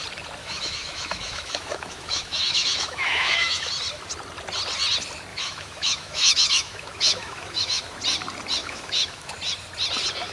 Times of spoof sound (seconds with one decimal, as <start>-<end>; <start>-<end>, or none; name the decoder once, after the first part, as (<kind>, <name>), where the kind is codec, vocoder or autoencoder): 0.4-3.7 (autoencoder, DAC-VAE); 5.3-7.8; 8.6-9.3